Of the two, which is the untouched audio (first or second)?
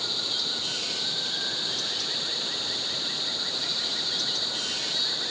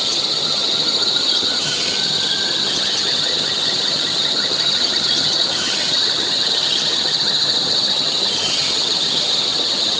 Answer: first